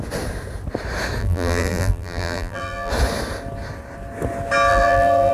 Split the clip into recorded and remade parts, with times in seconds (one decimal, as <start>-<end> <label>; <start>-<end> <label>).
0.0-1.2 recorded; 1.2-2.9 remade; 2.9-4.7 recorded; 4.7-5.3 remade